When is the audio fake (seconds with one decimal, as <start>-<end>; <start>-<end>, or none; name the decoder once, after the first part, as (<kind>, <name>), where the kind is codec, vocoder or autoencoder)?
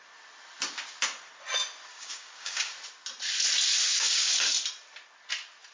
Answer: 1.9-2.7 (codec, DAC); 3.8-4.3